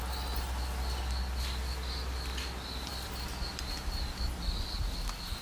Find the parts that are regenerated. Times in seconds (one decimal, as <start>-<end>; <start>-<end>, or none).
none